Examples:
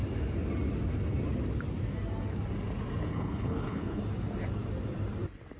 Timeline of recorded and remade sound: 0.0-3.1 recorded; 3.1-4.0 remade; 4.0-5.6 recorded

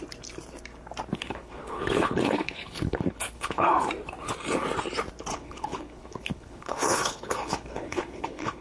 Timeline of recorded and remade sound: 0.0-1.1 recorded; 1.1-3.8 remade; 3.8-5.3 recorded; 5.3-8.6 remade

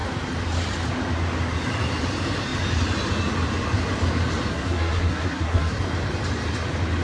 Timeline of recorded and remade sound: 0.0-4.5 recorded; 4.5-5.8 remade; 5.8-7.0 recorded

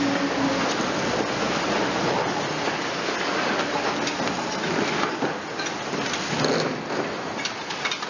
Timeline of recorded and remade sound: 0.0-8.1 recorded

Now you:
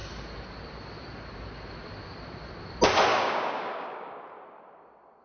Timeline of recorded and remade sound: 0.0-3.1 recorded; 3.1-4.2 remade; 4.2-5.2 recorded

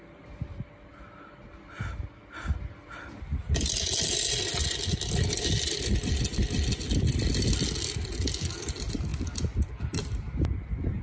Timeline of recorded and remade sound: 0.0-11.0 recorded